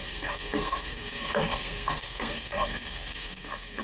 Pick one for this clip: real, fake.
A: fake